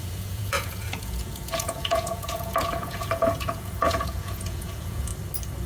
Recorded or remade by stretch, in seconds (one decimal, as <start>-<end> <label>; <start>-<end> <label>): 0.0-5.1 remade; 5.1-5.7 recorded